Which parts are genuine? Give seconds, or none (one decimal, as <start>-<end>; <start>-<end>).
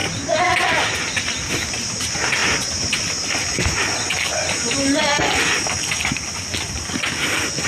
0.0-7.7